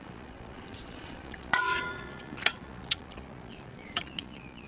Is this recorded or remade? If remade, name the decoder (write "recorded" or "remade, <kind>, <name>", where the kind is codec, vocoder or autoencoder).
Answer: remade, vocoder, Vocos